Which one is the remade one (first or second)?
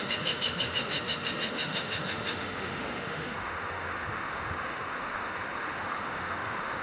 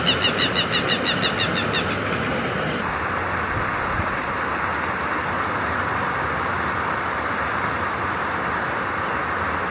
first